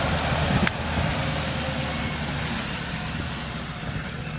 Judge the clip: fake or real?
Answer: real